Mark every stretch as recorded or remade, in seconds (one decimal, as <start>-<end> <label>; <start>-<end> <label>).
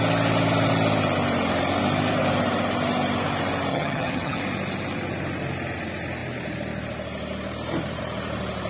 0.0-3.7 recorded; 3.7-4.4 remade; 4.4-8.7 recorded